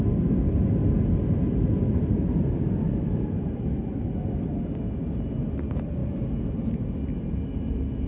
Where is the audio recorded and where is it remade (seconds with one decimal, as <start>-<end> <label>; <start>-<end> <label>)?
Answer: 0.0-8.1 recorded